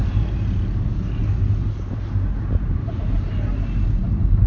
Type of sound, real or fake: real